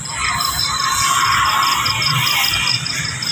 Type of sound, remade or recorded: recorded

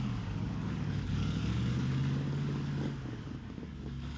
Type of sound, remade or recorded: remade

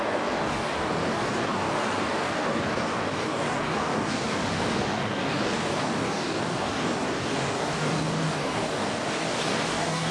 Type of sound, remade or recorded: remade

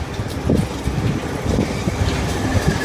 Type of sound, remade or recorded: recorded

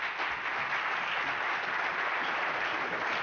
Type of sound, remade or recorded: recorded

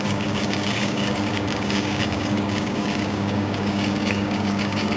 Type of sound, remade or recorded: remade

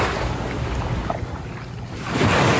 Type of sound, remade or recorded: recorded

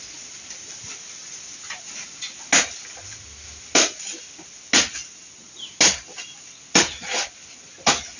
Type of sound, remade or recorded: recorded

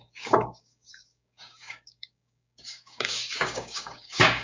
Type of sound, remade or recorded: remade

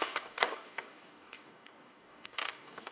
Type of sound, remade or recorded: remade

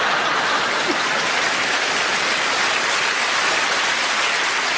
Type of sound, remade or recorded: recorded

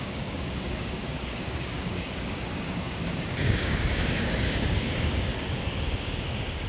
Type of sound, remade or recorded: remade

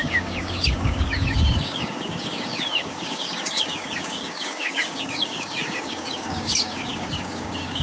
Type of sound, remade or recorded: remade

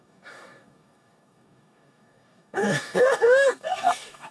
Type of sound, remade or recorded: remade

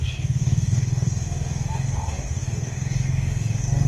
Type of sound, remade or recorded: remade